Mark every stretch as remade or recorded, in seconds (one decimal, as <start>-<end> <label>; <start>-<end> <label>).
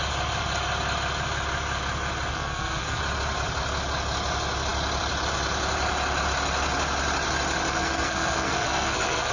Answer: 0.0-2.3 recorded; 2.3-3.0 remade; 3.0-7.7 recorded; 7.7-9.3 remade